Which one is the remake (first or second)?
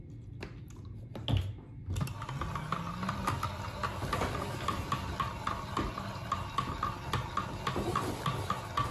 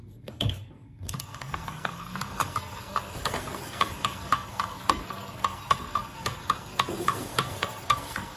second